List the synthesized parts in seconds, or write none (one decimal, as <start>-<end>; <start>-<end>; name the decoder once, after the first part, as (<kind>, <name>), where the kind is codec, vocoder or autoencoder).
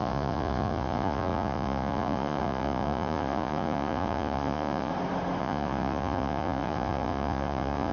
0.0-4.9 (vocoder, Vocos); 5.4-7.9